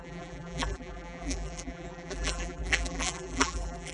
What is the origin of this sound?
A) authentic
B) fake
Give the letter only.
B